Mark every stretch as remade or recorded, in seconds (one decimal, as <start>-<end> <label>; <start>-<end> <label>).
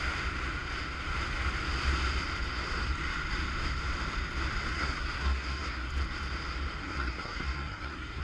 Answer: 0.0-4.7 recorded; 4.7-5.9 remade; 5.9-6.8 recorded; 6.8-8.2 remade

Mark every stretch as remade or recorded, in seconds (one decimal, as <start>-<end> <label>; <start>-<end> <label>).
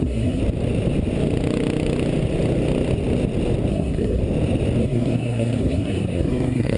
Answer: 0.0-0.4 remade; 0.4-3.7 recorded; 3.7-4.2 remade; 4.2-4.8 recorded; 4.8-6.8 remade